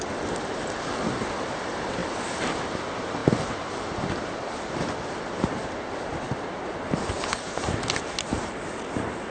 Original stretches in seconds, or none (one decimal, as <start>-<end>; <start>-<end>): 0.0-9.3